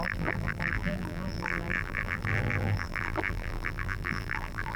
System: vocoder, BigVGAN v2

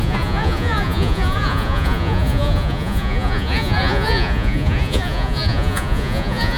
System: vocoder, Vocos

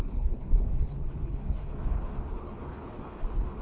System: codec, HILCodec